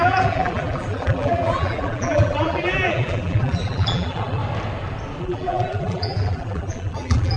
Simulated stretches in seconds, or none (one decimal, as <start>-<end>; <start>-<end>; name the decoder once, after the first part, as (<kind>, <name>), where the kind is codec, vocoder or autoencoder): 0.0-4.4 (vocoder, BigVGAN v2); 5.2-7.4